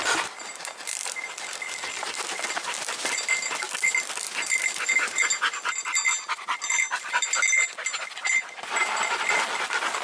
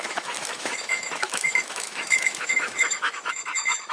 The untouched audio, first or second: first